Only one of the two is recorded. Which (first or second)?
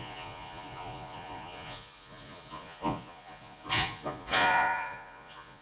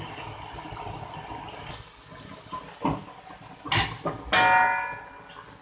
second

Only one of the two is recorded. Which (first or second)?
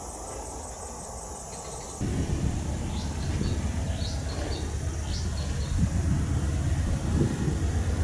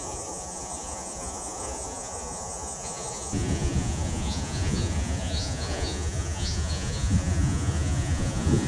first